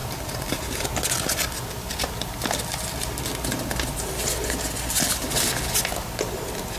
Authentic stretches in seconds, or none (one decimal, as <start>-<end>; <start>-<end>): 1.0-6.8

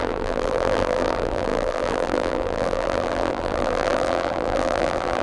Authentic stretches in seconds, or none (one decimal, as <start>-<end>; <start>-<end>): none